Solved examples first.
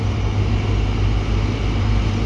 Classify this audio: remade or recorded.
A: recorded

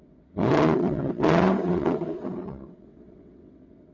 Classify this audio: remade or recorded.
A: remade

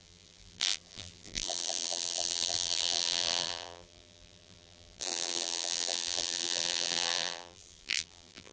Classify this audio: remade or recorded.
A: remade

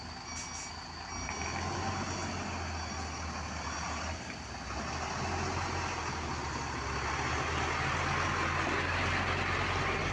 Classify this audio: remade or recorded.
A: recorded